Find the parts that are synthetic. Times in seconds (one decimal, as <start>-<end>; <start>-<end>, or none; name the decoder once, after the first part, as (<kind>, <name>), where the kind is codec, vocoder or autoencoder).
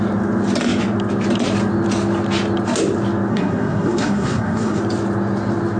3.3-4.8 (codec, SNAC)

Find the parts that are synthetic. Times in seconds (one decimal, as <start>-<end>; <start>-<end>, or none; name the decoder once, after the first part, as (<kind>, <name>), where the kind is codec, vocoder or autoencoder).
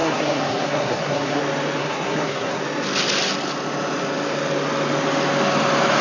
0.0-1.4 (codec, SNAC); 1.8-2.6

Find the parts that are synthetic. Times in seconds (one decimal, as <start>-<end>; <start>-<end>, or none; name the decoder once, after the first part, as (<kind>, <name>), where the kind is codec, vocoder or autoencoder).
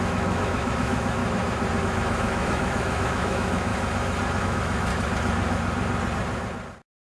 0.0-1.2 (autoencoder, DAC-VAE); 1.8-3.7; 4.4-4.9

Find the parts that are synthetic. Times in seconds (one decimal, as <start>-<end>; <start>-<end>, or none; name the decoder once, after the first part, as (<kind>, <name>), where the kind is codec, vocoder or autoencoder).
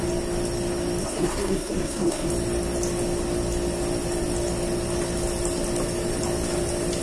1.0-2.3 (codec, SNAC)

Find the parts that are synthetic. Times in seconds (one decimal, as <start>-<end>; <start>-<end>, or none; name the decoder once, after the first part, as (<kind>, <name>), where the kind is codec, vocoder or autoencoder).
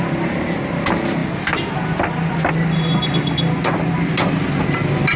none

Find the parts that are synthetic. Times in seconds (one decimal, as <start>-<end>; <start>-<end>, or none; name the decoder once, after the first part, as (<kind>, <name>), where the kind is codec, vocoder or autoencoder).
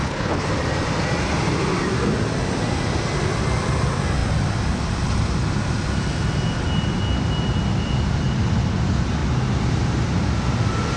0.0-0.5 (codec, HILCodec)